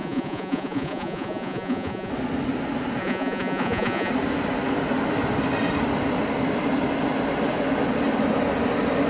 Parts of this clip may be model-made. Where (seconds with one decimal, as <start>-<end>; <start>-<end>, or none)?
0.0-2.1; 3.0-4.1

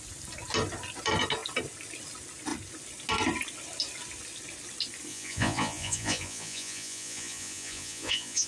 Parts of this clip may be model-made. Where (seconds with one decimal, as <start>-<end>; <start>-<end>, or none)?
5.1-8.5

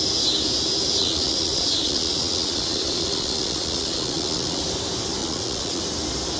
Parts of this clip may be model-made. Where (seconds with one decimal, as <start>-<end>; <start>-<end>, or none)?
1.0-4.6; 5.2-5.8

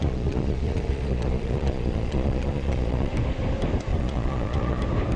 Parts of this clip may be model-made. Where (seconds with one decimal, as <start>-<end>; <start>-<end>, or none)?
0.0-3.1; 3.9-4.8

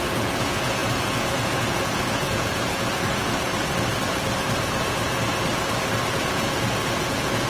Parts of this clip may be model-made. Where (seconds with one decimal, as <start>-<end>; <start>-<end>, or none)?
0.0-3.5; 6.1-7.5

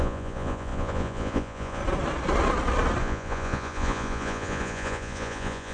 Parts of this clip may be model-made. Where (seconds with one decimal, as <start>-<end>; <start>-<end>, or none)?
0.0-1.8; 3.0-5.7

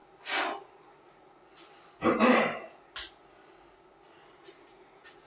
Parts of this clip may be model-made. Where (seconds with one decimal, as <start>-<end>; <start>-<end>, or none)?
0.8-1.4; 4.6-5.3

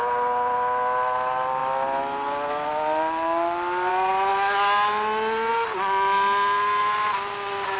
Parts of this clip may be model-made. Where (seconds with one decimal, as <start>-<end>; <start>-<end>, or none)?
none